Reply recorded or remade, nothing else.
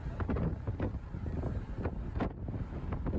recorded